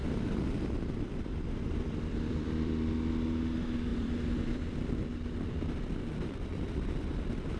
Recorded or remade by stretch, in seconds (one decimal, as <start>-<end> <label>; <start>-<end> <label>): 0.0-2.9 remade; 2.9-3.9 recorded; 3.9-4.9 remade; 4.9-6.5 recorded; 6.5-7.1 remade; 7.1-7.6 recorded